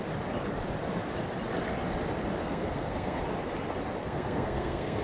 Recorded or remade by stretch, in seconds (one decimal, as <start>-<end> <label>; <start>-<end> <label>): 0.0-2.4 recorded; 2.4-3.2 remade; 3.2-4.0 recorded; 4.0-5.0 remade